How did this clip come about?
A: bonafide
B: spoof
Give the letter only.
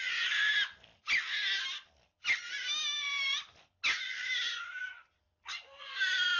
A